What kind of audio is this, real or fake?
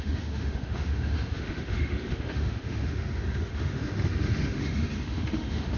fake